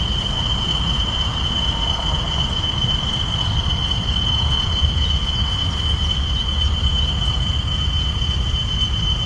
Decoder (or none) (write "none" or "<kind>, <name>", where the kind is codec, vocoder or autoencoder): none